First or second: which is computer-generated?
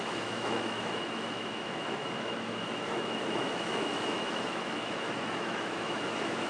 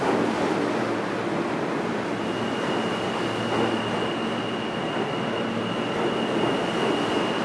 first